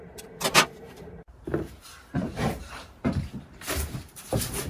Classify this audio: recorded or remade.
remade